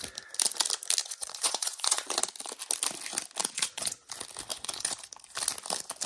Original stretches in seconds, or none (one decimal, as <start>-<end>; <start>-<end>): 0.0-1.0; 2.2-3.4; 4.0-4.5; 5.1-6.1